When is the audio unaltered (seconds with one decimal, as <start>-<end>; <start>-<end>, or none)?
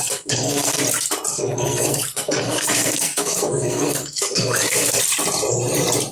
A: 0.8-1.3; 5.0-6.1